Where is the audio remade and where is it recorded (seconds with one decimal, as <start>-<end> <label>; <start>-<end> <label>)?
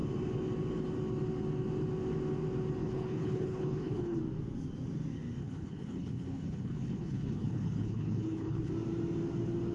0.0-2.8 recorded; 2.8-4.2 remade; 4.2-5.4 recorded; 5.4-8.7 remade; 8.7-9.7 recorded